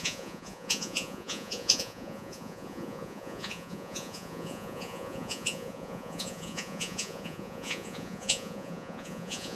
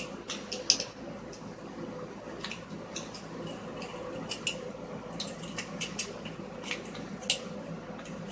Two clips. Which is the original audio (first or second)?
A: second